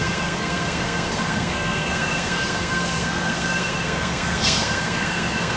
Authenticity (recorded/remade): remade